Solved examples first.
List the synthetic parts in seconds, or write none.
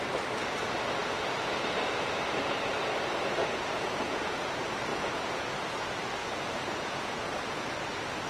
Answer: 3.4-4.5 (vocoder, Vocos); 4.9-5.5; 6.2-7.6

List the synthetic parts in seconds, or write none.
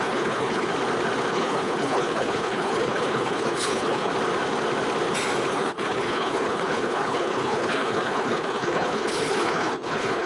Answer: 0.0-0.7 (codec, HILCodec); 1.3-4.1; 5.5-10.3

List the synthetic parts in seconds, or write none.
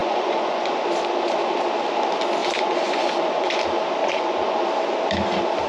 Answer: 0.0-0.7 (vocoder, Vocos); 2.4-3.6; 4.0-4.6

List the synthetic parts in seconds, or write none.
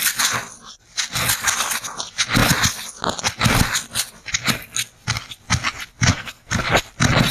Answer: 6.1-6.7 (codec, SNAC)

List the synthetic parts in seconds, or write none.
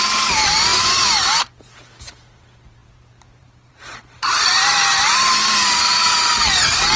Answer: 0.0-7.0 (vocoder, BigVGAN v2)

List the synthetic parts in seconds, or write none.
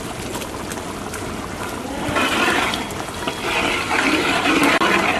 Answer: none